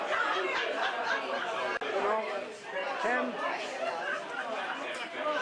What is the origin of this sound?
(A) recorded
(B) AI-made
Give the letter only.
A